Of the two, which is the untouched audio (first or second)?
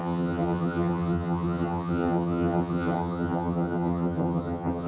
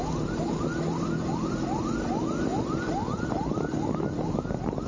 second